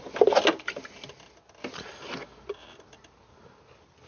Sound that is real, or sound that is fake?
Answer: real